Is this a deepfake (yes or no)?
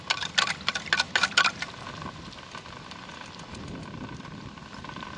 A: no